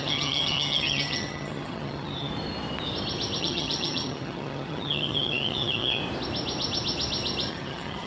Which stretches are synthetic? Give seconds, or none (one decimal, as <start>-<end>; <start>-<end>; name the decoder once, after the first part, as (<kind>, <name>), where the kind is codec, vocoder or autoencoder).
0.0-2.3 (vocoder, HiFi-GAN); 3.4-6.0; 7.5-8.1